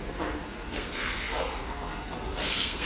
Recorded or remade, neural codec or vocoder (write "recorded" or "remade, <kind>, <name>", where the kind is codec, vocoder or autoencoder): remade, codec, SNAC